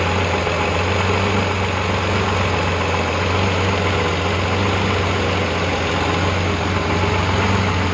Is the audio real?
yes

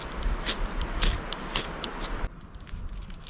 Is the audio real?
yes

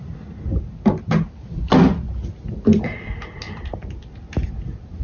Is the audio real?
yes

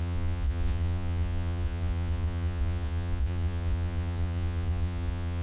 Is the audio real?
no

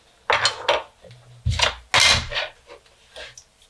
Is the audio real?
yes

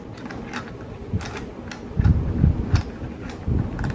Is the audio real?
yes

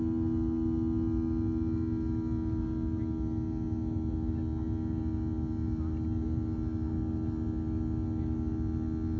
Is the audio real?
yes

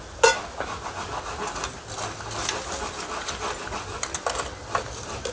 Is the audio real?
yes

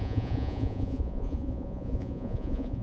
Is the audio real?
no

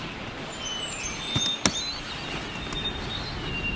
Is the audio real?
yes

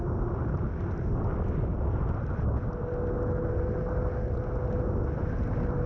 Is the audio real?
yes